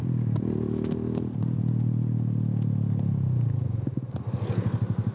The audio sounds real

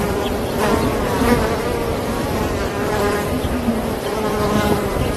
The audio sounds real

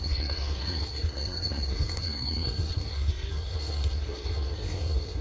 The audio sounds fake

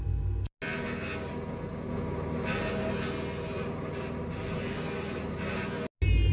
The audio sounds real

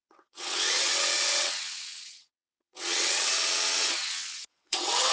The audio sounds fake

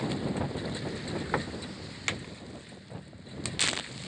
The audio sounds real